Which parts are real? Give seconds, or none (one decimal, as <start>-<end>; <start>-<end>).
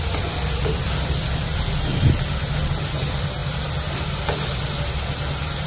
0.0-5.7